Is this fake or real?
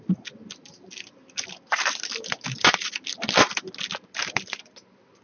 real